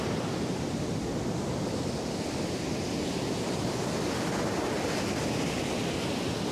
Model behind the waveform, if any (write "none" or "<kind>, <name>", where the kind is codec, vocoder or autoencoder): none